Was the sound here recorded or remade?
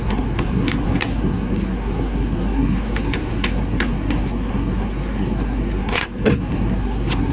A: remade